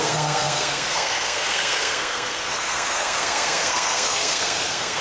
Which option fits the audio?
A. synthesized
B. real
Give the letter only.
A